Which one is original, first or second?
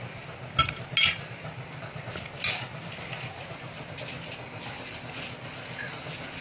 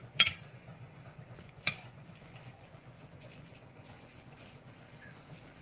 first